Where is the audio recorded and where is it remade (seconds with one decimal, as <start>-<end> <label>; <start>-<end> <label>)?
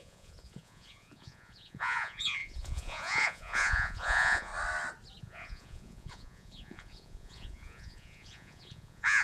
0.0-4.5 remade; 4.5-5.2 recorded; 5.2-9.2 remade